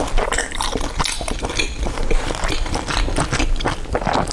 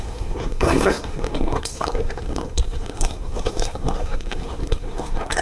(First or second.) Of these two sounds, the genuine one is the first